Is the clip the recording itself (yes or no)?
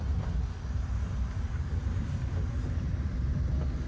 yes